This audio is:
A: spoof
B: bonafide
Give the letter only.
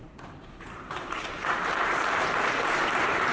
A